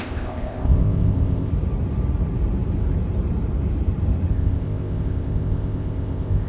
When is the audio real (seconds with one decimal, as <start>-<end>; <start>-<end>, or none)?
1.5-4.3